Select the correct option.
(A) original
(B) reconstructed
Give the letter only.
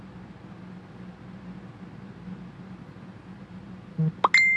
A